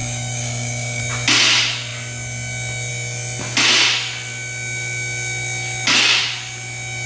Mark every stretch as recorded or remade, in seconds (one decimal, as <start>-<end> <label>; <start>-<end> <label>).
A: 0.0-1.0 remade; 1.0-7.1 recorded